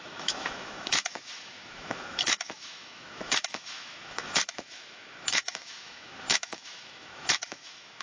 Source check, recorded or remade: remade